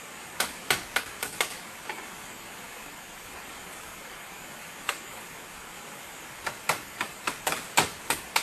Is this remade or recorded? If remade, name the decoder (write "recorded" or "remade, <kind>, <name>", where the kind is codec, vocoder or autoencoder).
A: remade, codec, DAC